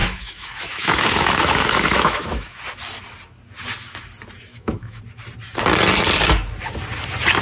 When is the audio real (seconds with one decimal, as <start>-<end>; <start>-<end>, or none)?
2.6-4.5; 5.0-7.4

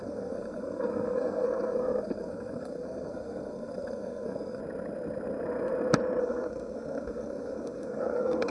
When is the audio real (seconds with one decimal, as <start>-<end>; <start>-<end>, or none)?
4.6-6.2

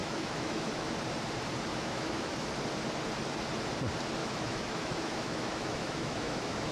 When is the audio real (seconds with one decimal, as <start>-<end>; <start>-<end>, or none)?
0.9-1.7; 2.5-4.2

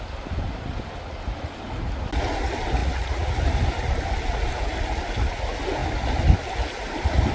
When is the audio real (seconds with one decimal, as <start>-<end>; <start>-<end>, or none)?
0.0-2.8; 3.4-7.3

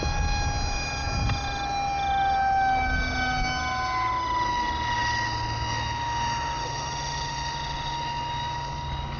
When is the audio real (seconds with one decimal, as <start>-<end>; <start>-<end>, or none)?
0.0-9.2